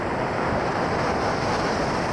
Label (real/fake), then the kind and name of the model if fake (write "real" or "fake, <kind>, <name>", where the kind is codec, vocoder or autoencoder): real